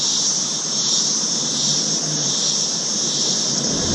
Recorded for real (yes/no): no